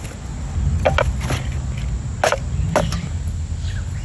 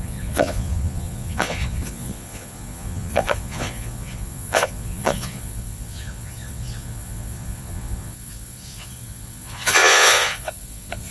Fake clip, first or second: second